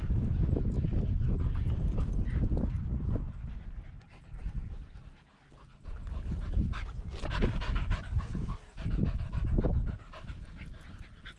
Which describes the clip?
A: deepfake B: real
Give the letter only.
B